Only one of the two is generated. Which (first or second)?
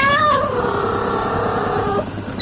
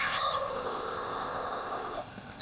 second